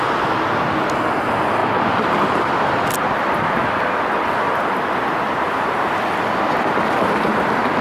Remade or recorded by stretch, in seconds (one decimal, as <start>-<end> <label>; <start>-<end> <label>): 0.0-7.8 recorded